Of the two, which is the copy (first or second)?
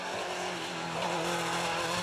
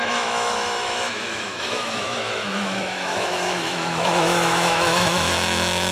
second